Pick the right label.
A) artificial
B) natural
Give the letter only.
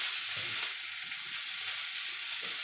B